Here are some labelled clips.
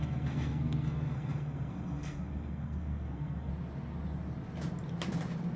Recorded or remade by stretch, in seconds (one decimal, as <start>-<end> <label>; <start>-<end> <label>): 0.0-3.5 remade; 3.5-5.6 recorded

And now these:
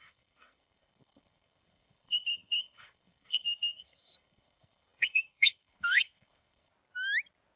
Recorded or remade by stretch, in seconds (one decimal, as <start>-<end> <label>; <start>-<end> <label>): 0.0-6.7 remade; 6.7-7.6 recorded

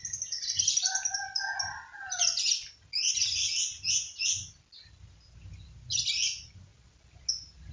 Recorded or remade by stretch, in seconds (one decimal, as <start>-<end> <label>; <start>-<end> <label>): 0.0-7.7 recorded

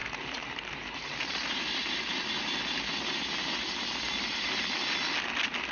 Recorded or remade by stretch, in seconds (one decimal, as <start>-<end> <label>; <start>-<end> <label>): 0.0-1.2 remade; 1.2-5.7 recorded